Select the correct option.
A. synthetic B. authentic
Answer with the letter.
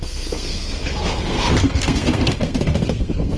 A